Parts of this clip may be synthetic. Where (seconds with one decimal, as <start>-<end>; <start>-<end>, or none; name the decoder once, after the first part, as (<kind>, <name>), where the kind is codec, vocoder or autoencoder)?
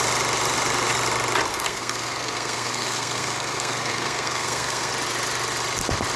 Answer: 1.5-4.9 (codec, SNAC)